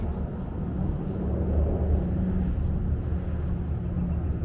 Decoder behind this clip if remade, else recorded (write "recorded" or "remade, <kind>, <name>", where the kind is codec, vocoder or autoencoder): recorded